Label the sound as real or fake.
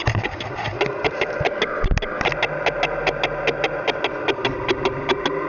real